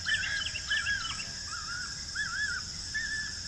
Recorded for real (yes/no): yes